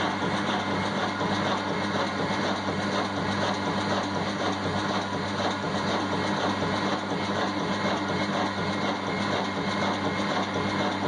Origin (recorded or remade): recorded